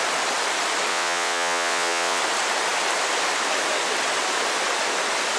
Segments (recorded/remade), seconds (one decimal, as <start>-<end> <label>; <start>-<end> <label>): 0.0-0.9 recorded; 0.9-2.2 remade; 2.2-5.4 recorded